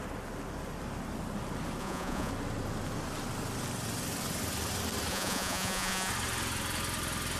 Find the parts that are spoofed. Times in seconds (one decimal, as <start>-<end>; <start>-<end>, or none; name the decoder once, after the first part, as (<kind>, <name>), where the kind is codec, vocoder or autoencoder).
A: 1.8-2.3 (vocoder, Vocos); 5.1-6.1

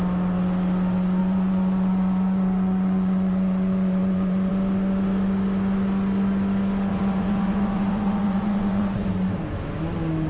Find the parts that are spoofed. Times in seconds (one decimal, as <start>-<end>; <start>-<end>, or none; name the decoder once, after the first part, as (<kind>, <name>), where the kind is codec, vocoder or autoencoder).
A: 1.2-4.5 (vocoder, Vocos); 6.9-9.1

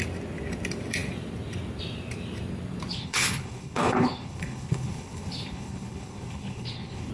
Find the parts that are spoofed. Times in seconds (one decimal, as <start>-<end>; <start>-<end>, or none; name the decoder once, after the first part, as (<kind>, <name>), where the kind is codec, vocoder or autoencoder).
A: 2.9-7.1 (codec, HILCodec)

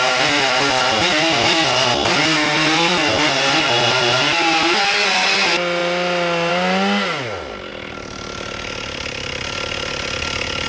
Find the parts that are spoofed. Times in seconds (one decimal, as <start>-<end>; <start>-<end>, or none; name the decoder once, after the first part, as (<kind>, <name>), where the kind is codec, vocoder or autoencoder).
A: none